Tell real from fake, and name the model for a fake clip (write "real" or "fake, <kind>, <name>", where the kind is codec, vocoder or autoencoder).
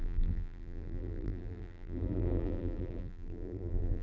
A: fake, vocoder, BigVGAN v2